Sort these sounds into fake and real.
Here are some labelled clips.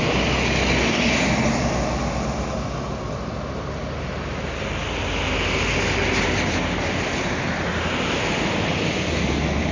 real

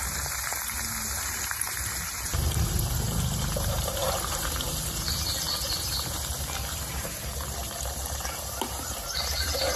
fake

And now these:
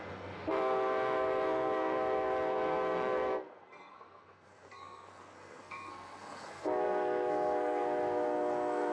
fake